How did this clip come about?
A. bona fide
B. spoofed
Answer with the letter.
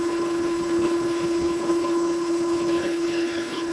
B